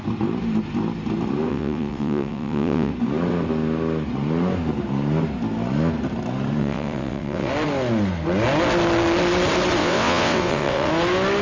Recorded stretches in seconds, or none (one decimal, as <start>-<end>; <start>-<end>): 0.0-1.5; 2.9-6.6; 7.5-9.8; 10.9-11.4